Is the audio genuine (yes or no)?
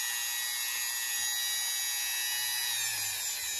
yes